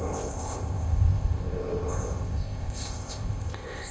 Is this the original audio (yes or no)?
no